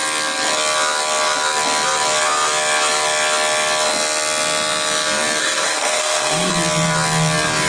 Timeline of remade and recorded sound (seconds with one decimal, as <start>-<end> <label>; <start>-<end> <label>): 0.0-5.4 recorded; 5.4-6.5 remade; 6.5-7.7 recorded